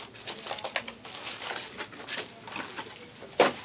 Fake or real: real